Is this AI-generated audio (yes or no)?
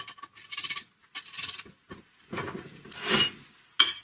no